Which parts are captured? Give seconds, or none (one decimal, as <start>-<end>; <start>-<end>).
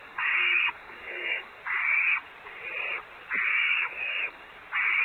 1.6-3.5; 4.5-5.0